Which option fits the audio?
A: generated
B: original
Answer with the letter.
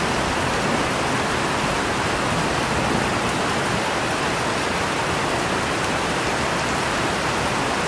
B